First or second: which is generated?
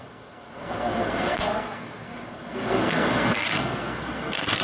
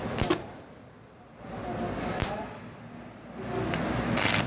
first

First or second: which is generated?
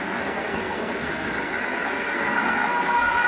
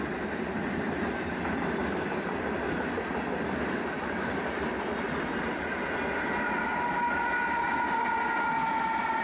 first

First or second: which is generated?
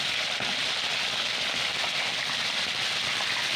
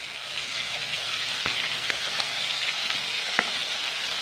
second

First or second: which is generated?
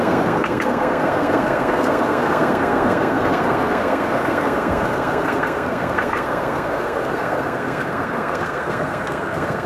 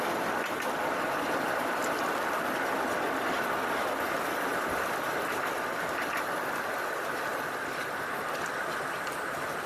first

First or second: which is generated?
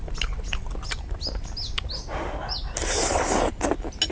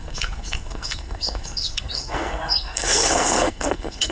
second